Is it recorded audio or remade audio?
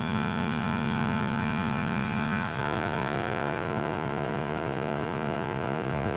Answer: remade